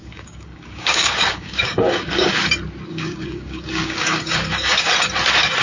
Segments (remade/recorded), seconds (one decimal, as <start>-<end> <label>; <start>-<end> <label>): 0.0-2.3 remade; 2.3-2.9 recorded; 2.9-4.9 remade; 4.9-5.6 recorded